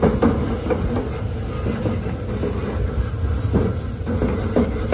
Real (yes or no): yes